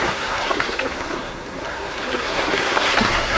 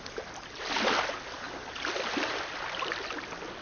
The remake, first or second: first